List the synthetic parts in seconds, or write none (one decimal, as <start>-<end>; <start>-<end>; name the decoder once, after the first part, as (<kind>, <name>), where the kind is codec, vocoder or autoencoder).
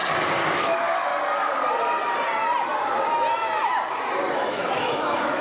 0.5-1.1 (autoencoder, DAC-VAE); 4.3-5.4